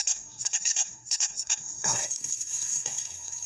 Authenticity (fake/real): fake